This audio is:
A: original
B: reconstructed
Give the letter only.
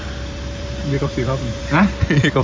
B